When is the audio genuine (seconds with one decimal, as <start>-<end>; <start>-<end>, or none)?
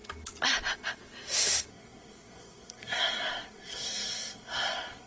0.0-1.7